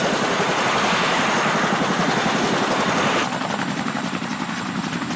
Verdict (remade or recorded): remade